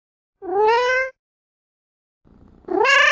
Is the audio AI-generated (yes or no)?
no